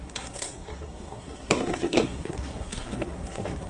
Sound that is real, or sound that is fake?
fake